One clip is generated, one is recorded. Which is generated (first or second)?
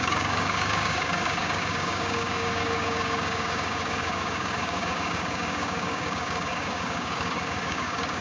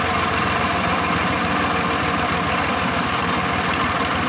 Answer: first